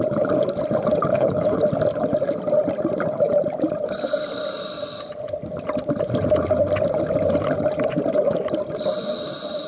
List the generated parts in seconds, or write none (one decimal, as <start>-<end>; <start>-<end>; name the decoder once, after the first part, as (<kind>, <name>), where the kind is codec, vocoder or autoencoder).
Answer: 1.1-1.6 (codec, HILCodec)